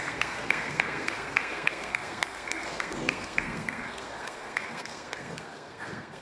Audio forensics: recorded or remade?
remade